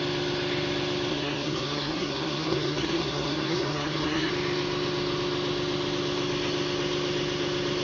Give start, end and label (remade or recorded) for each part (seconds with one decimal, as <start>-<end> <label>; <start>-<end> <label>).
0.0-1.1 recorded; 1.1-4.3 remade; 4.3-7.8 recorded